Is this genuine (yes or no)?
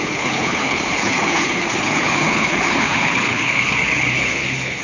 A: no